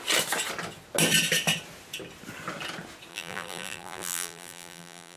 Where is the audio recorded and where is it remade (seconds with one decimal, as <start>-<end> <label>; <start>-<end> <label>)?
0.0-3.1 recorded; 3.1-5.2 remade